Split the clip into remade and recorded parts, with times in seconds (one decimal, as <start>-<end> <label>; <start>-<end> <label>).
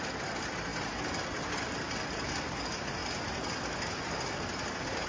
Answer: 0.0-5.1 recorded